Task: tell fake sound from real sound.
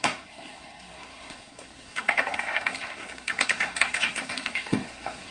fake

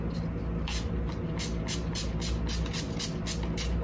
real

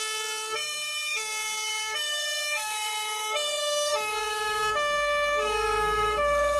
fake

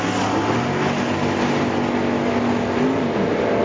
real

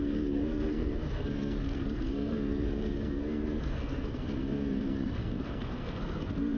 fake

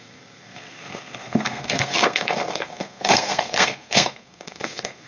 fake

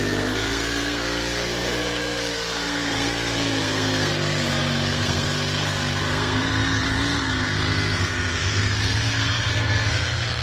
fake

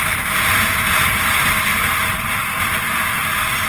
real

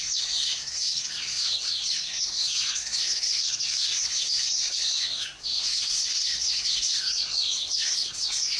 fake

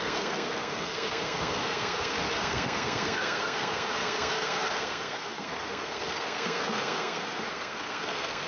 fake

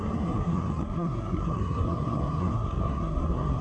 fake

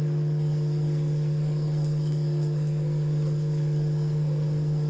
fake